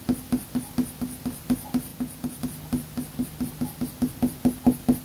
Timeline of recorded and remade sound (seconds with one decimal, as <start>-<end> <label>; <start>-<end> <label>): 0.0-1.9 recorded; 1.9-2.4 remade; 2.4-5.0 recorded

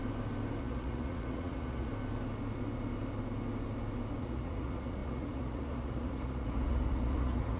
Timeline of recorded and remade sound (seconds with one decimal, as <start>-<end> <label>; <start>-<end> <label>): 0.0-0.6 recorded; 0.6-1.9 remade; 1.9-4.2 recorded; 4.2-7.6 remade

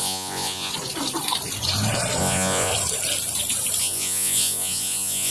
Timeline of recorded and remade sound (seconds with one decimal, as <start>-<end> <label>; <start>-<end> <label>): 0.0-0.7 remade; 0.7-2.2 recorded; 2.2-2.7 remade; 2.7-3.8 recorded; 3.8-5.3 remade

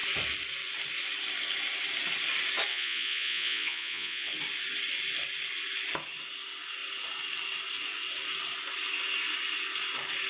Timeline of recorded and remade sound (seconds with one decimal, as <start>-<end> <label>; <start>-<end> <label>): 0.0-2.7 recorded; 2.7-4.3 remade; 4.3-10.3 recorded

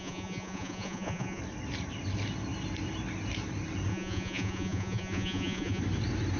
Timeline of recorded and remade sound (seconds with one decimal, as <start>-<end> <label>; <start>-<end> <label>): 0.0-1.4 remade; 1.4-3.9 recorded; 3.9-5.8 remade; 5.8-6.4 recorded